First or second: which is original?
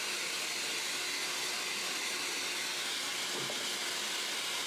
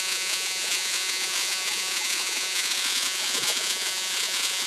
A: first